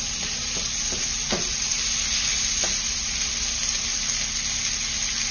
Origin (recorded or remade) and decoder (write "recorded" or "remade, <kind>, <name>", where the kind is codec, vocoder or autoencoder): recorded